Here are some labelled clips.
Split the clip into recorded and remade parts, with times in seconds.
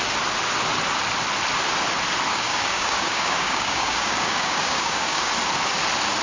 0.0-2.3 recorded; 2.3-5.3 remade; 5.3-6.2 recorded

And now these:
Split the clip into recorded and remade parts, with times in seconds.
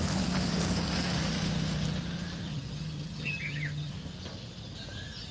0.0-2.5 recorded; 2.5-3.9 remade; 3.9-5.3 recorded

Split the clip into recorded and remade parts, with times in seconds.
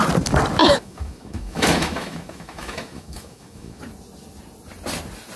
0.0-0.6 recorded; 0.6-3.8 remade; 3.8-5.4 recorded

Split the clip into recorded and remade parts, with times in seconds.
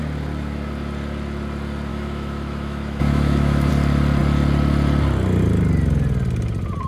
0.0-1.9 recorded; 1.9-3.7 remade; 3.7-6.9 recorded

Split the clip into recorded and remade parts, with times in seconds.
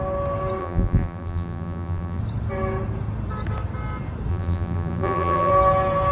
0.0-0.6 recorded; 0.6-2.2 remade; 2.2-4.3 recorded; 4.3-5.5 remade; 5.5-6.1 recorded